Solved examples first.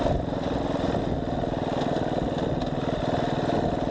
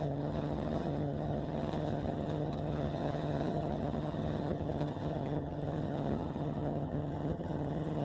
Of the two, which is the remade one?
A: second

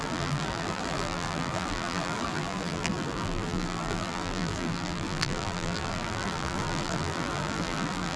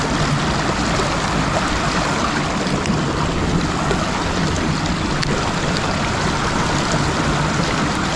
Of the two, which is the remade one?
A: first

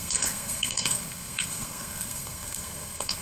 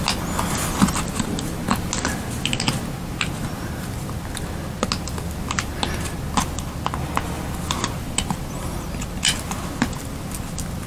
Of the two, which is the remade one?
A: first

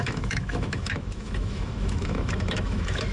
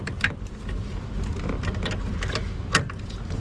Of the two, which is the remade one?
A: first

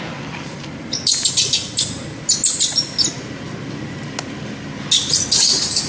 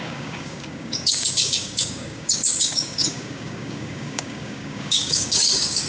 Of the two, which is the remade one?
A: second